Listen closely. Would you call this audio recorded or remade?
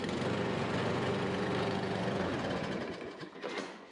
remade